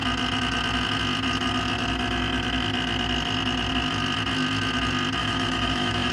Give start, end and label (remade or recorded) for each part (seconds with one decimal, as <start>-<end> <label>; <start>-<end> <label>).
0.0-5.2 recorded; 5.2-6.1 remade